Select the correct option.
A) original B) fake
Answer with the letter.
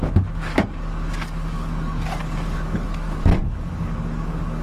B